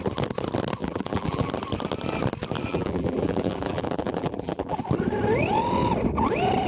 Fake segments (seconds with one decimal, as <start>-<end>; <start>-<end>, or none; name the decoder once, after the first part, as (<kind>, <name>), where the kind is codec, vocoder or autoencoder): 0.8-1.5 (vocoder, BigVGAN v2); 2.7-4.8